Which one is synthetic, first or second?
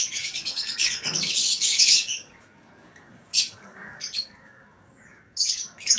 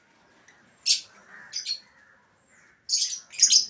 first